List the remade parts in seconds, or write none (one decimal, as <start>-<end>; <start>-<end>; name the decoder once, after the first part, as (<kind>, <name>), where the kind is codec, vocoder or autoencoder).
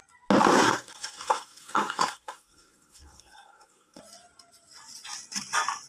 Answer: 0.5-4.0 (codec, SNAC)